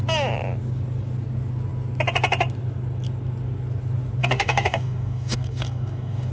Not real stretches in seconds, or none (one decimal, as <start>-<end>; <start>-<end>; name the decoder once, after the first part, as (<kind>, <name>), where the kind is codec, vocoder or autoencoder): 4.2-6.3 (codec, DAC)